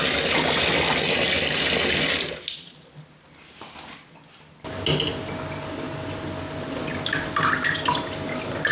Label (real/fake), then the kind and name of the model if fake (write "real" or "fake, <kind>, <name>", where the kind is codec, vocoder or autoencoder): real